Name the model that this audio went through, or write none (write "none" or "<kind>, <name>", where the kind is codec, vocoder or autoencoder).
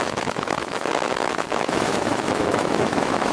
autoencoder, DAC-VAE